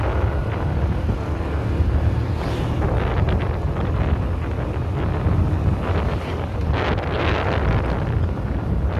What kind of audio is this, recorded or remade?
recorded